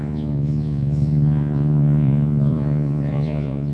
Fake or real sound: fake